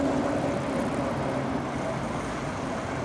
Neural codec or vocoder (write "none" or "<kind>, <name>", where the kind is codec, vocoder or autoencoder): none